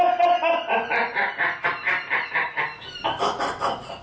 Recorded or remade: recorded